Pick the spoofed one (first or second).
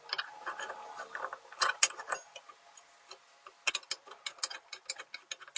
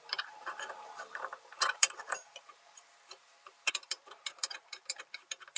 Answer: second